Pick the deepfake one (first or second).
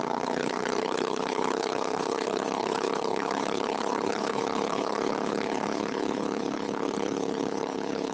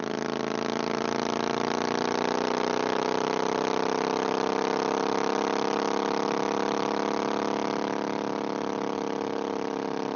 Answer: first